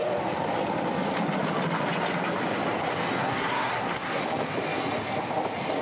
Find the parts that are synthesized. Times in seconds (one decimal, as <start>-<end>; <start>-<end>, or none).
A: 3.2-4.2